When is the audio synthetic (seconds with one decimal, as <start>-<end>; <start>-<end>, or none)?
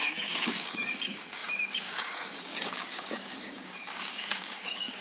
0.0-5.0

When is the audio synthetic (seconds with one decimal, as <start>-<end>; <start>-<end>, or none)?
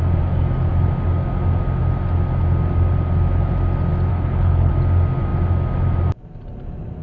4.1-4.7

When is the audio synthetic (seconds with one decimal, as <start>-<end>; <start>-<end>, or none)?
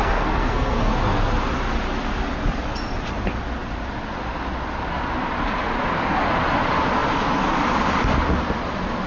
0.0-0.9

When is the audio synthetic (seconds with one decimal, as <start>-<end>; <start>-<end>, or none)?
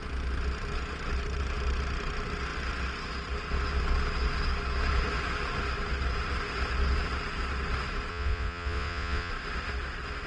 8.1-9.3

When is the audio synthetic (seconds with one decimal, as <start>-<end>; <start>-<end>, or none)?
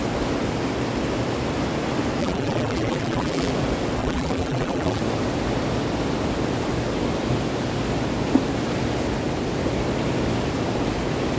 2.2-3.5; 4.0-5.0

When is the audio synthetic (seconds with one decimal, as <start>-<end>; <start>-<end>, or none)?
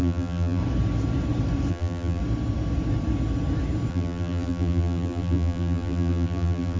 0.0-0.6; 1.7-2.2; 3.9-6.8